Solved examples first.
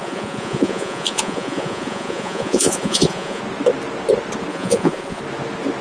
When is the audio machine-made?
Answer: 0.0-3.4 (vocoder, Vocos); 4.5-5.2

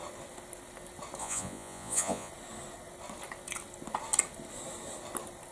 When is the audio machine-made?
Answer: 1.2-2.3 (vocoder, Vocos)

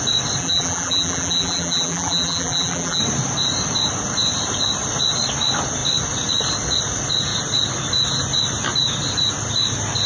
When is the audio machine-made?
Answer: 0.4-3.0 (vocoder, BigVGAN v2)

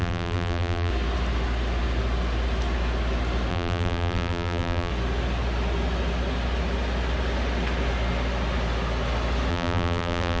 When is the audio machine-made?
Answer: 0.0-0.9 (vocoder, BigVGAN v2); 3.5-4.9; 9.5-10.4

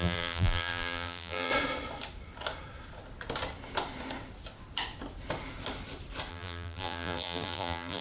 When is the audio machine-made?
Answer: 0.0-1.5 (vocoder, BigVGAN v2); 6.3-8.0